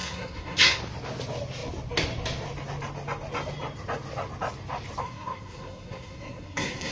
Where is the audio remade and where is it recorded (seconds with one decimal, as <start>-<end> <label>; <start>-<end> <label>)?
0.0-0.8 remade; 0.8-5.0 recorded; 5.0-6.9 remade

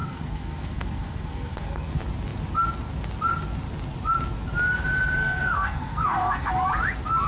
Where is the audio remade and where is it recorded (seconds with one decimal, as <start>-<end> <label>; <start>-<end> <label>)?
0.0-1.9 remade; 1.9-5.2 recorded; 5.2-6.5 remade; 6.5-7.3 recorded

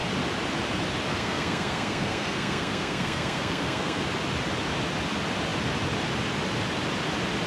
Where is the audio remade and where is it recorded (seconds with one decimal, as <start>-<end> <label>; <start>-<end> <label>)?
0.0-1.1 recorded; 1.1-4.0 remade; 4.0-7.5 recorded

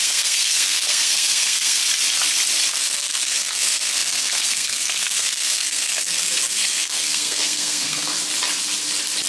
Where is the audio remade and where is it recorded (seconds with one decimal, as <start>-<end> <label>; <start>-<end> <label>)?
0.0-1.8 remade; 1.8-2.7 recorded; 2.7-8.1 remade; 8.1-9.3 recorded

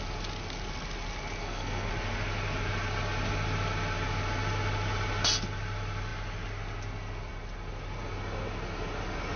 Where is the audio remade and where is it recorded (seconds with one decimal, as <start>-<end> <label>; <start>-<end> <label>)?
0.0-1.4 recorded; 1.4-1.9 remade; 1.9-9.4 recorded

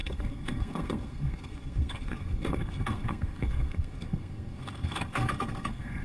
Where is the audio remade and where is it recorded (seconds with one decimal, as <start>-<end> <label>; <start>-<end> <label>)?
0.0-6.0 remade

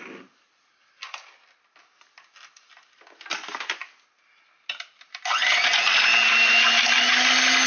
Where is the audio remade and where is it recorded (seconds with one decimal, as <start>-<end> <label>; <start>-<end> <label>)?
0.0-7.7 recorded

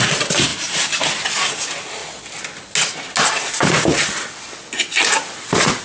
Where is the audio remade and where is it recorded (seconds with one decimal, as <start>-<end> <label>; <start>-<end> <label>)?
0.0-5.8 recorded